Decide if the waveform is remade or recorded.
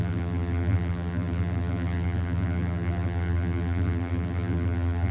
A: remade